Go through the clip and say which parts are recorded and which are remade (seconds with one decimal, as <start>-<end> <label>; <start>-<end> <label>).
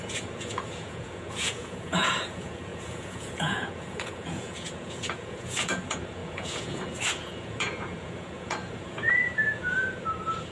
0.0-10.5 remade